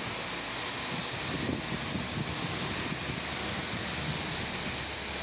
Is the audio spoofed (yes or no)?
no